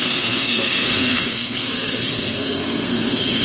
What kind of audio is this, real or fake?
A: fake